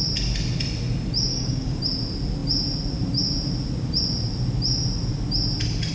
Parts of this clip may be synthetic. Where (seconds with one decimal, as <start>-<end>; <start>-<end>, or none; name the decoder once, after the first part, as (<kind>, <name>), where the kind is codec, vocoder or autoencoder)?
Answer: 1.3-1.8 (codec, DAC)